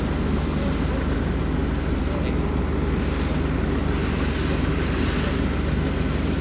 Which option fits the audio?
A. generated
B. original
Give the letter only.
B